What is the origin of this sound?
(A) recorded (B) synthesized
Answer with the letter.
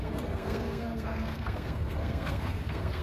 B